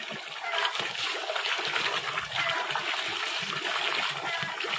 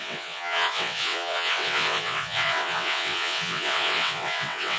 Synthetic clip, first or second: second